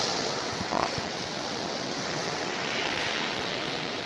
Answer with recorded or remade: remade